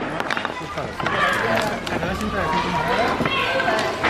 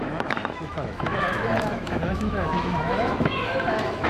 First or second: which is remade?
second